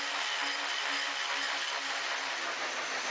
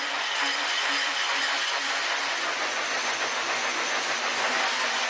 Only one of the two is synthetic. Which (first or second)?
second